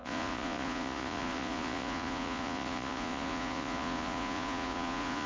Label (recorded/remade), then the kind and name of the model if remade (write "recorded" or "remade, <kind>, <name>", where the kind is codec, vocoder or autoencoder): remade, vocoder, Vocos